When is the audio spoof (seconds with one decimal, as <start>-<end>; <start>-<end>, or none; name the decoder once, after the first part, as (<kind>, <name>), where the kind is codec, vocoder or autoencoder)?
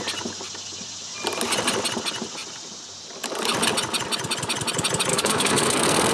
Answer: 5.1-6.1 (codec, SNAC)